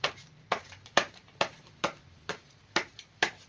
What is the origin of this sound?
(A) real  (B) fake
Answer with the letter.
B